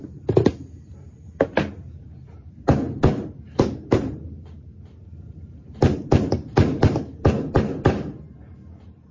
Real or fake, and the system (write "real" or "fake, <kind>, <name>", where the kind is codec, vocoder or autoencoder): real